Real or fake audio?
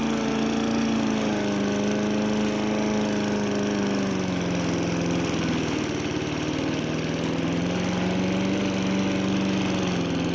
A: real